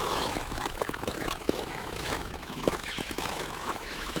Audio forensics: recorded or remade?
remade